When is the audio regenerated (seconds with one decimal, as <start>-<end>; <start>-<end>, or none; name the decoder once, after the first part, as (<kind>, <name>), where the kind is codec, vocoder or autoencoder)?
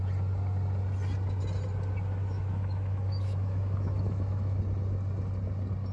2.2-4.6 (autoencoder, DAC-VAE)